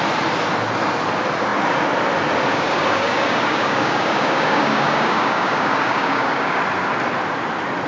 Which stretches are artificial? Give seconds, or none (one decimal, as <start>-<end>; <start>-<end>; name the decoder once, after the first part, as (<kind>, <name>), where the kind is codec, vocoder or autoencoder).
2.5-6.6 (codec, DAC)